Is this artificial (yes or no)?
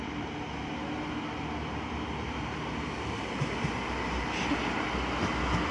no